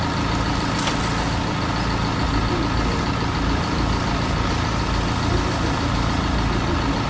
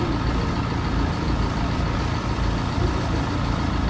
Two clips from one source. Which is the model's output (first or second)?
second